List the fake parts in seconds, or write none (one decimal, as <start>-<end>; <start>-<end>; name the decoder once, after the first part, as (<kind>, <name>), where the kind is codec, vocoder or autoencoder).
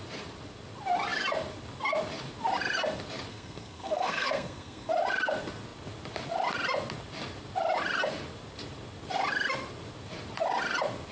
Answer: 3.3-4.9 (codec, SNAC)